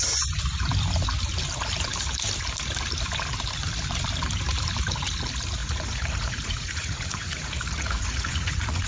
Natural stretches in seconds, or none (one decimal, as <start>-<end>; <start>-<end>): 0.0-5.6